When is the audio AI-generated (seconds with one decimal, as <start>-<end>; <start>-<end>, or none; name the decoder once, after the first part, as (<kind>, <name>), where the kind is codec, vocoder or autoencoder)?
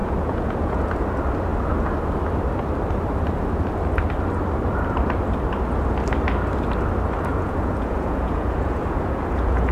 0.0-0.8 (vocoder, Vocos); 7.3-9.7